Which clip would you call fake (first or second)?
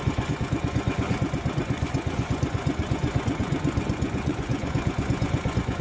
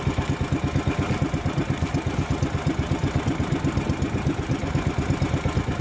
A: first